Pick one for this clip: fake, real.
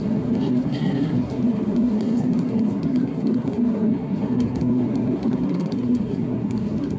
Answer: fake